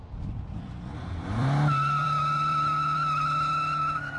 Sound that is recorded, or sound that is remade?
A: remade